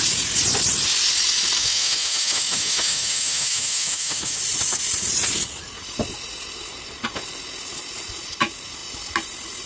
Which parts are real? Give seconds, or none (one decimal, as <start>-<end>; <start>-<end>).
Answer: 0.0-1.6; 4.4-9.7